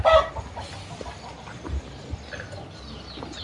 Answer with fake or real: real